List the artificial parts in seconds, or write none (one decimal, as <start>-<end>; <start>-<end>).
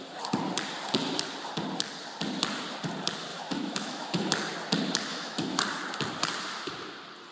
3.3-4.3; 5.1-5.6